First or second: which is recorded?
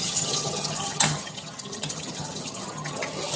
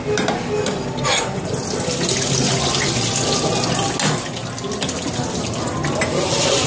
second